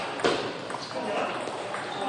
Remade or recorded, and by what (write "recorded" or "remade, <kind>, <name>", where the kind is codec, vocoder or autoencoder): remade, vocoder, BigVGAN v2